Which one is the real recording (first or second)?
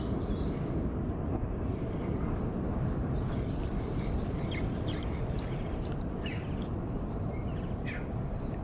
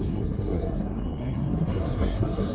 first